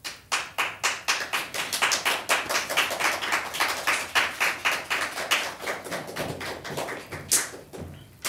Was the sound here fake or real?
real